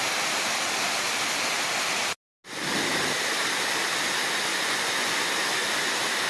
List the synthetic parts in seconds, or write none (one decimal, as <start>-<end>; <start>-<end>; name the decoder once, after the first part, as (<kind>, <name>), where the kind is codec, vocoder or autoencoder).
4.5-5.3 (vocoder, Vocos)